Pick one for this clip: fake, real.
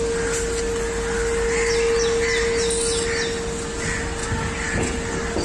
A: real